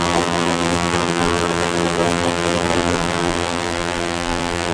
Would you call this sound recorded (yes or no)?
no